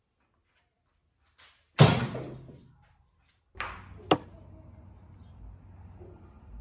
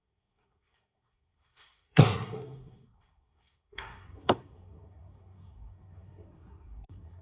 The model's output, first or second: second